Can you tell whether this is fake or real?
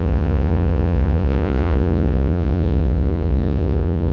fake